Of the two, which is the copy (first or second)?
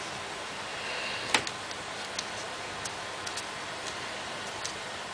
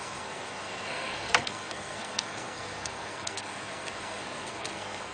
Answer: second